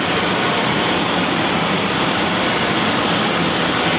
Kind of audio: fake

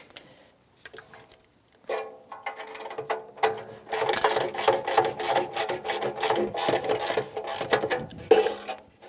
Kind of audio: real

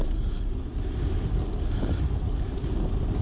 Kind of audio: real